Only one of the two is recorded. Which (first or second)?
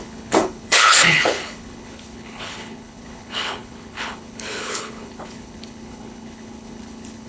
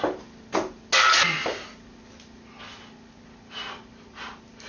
second